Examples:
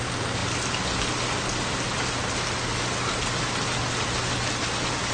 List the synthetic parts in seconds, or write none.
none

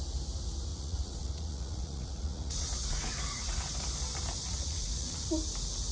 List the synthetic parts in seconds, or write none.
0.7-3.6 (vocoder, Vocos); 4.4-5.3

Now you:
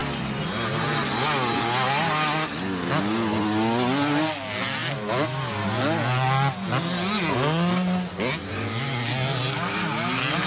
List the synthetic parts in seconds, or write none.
none

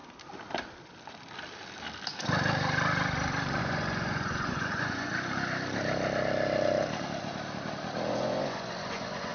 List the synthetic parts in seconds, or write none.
3.6-5.1 (vocoder, Vocos); 8.1-9.3

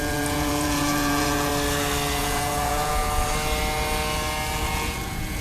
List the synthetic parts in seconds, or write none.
0.0-1.5 (vocoder, Vocos); 2.2-3.0; 4.6-5.4

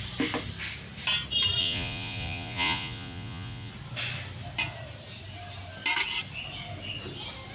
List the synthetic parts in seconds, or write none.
1.6-3.7 (vocoder, Vocos)